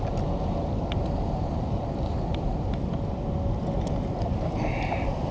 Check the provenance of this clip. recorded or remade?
recorded